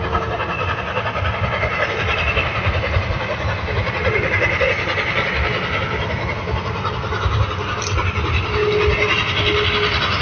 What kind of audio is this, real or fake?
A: real